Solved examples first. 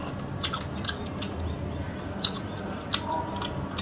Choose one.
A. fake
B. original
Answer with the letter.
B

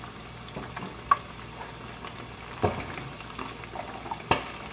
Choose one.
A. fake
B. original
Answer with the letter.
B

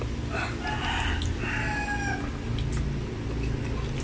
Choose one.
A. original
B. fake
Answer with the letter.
A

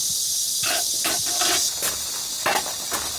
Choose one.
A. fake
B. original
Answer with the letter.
B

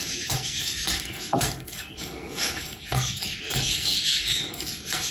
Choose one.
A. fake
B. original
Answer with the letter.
A